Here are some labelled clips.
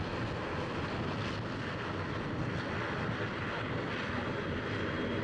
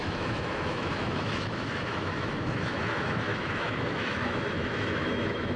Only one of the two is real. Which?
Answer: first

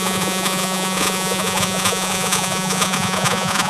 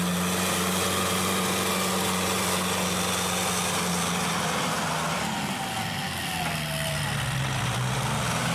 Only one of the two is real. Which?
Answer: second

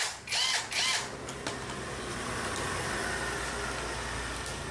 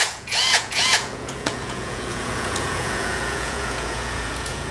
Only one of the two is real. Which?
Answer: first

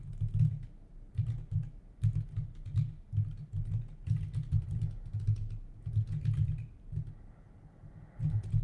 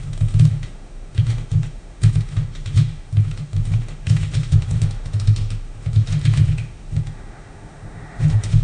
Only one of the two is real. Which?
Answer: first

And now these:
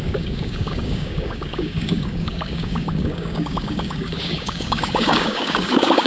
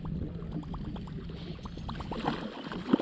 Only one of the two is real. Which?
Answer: second